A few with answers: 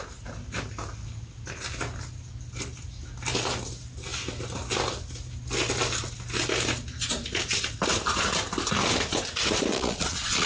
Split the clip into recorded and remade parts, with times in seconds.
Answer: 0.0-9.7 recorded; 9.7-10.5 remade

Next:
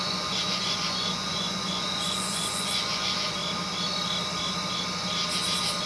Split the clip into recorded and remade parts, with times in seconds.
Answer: 0.0-3.4 remade; 3.4-5.9 recorded

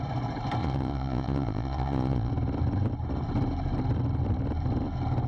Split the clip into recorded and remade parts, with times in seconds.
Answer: 0.0-0.6 recorded; 0.6-2.3 remade; 2.3-5.3 recorded

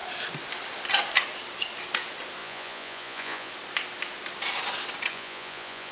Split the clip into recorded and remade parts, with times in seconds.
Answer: 0.0-2.4 recorded; 2.4-3.5 remade; 3.5-5.1 recorded; 5.1-5.9 remade